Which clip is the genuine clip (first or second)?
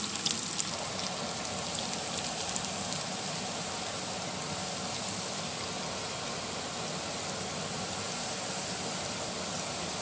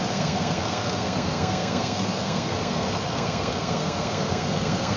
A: first